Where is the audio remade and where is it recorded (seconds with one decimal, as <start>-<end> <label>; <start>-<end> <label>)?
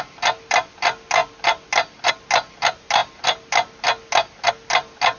0.0-5.2 recorded